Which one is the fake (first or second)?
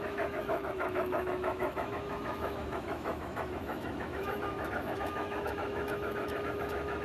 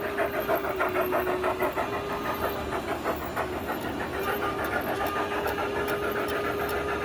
first